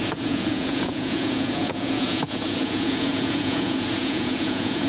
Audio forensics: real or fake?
fake